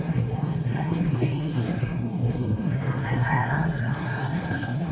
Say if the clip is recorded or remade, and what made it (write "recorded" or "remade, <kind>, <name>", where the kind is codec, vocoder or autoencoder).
remade, codec, SNAC